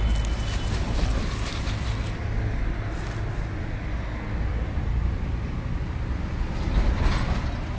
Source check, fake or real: real